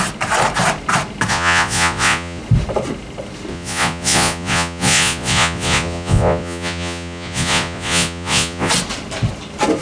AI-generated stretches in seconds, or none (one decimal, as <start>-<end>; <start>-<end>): 1.3-2.4; 3.5-8.7